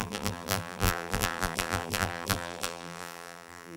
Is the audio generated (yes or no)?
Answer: yes